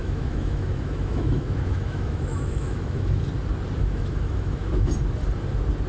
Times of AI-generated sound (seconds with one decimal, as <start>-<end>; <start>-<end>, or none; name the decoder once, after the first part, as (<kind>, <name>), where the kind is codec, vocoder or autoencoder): 0.0-3.2 (autoencoder, DAC-VAE); 3.8-4.9